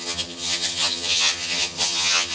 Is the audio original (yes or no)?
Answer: no